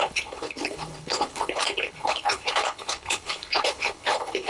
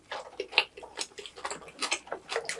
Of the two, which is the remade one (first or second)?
first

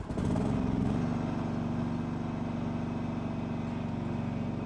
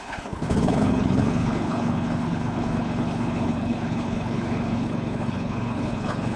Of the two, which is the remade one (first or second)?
second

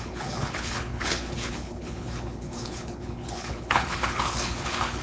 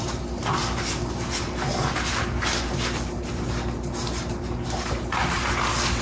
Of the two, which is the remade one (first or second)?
first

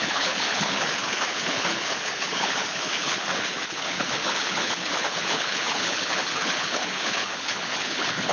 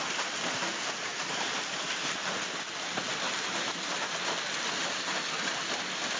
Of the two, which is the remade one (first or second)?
first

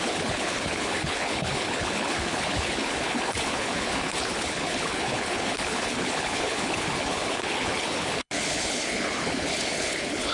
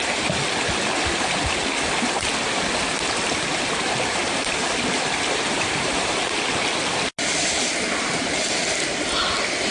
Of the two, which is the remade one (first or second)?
first